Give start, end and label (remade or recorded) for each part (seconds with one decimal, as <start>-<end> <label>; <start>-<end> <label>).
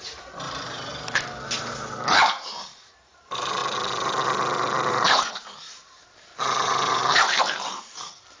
0.0-0.9 remade; 0.9-1.6 recorded; 1.6-3.6 remade; 3.6-4.9 recorded; 4.9-8.4 remade